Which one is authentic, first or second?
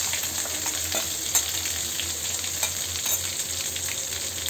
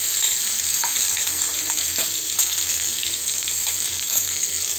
first